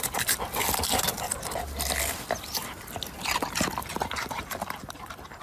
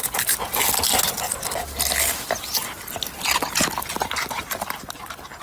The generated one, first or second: first